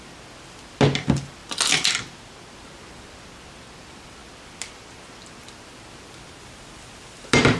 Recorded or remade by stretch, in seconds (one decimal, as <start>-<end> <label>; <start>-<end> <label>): 0.0-7.6 recorded